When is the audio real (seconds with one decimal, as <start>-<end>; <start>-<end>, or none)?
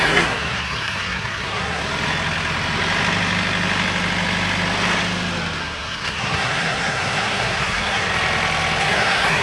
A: 1.8-5.6; 8.1-8.8